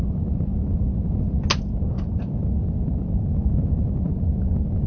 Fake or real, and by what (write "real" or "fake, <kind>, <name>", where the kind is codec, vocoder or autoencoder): real